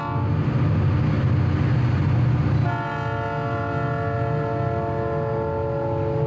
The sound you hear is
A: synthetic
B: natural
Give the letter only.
B